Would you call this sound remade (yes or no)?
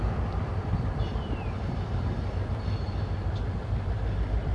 yes